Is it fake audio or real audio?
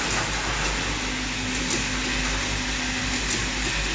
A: real